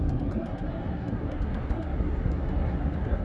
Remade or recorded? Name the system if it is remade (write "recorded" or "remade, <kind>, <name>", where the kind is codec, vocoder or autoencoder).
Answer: remade, codec, SNAC